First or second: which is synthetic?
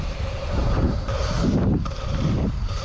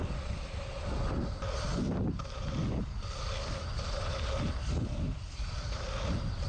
first